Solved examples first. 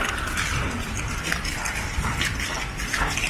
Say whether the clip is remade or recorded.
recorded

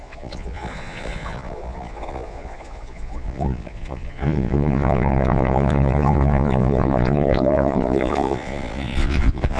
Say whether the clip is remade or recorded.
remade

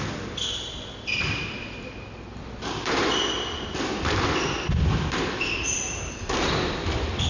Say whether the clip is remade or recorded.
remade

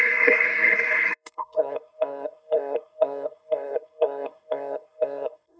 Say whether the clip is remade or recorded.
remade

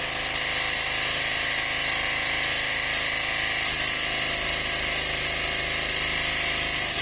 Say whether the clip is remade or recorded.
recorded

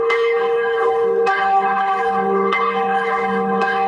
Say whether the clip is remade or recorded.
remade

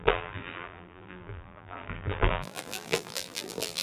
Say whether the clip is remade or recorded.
remade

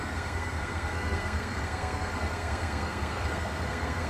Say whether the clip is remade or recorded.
remade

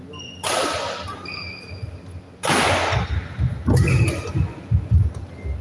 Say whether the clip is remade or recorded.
recorded